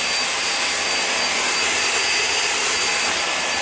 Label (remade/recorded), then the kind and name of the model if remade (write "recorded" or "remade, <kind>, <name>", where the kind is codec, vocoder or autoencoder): recorded